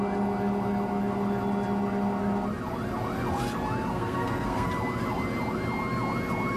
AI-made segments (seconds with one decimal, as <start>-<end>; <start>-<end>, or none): 3.9-4.7

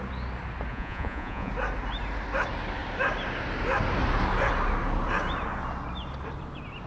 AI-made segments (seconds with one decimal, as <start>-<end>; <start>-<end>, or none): 0.7-1.5